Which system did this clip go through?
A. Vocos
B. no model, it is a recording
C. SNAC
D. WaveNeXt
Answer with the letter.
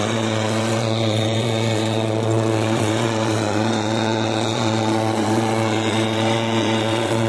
A